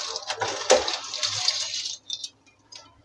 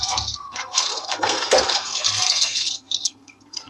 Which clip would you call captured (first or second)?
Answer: first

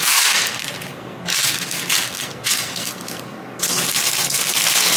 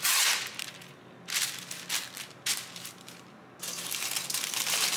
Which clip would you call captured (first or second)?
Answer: second